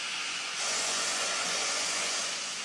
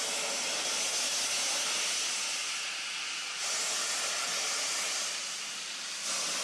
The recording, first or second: second